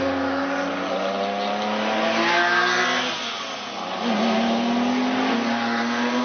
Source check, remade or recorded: recorded